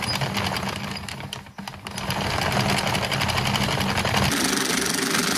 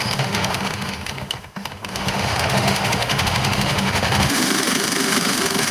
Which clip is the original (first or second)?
first